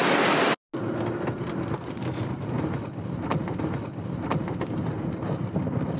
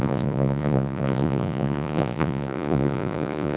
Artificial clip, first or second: second